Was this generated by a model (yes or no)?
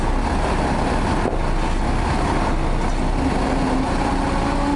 no